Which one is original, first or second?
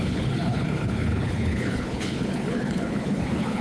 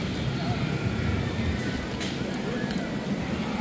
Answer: second